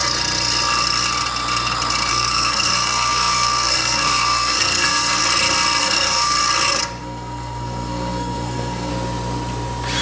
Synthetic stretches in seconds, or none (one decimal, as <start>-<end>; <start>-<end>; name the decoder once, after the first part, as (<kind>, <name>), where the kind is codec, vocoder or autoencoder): 2.1-5.2 (codec, SNAC); 5.8-6.4; 7.0-8.9